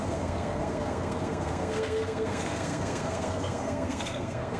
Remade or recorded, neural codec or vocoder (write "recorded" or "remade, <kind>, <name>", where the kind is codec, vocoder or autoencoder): remade, codec, SNAC